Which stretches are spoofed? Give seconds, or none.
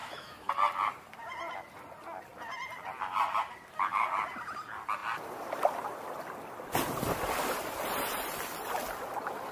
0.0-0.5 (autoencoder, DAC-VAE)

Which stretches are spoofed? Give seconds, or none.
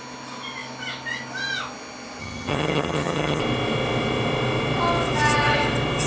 2.2-3.4 (vocoder, HiFi-GAN)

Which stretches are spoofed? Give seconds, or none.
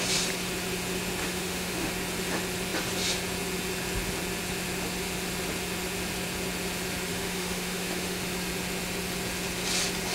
1.2-1.9 (autoencoder, DAC-VAE); 7.1-8.2